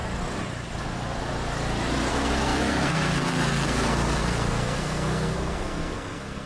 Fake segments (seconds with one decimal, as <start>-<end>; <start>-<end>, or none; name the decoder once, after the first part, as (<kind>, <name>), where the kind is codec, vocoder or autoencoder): 2.1-6.5 (codec, SNAC)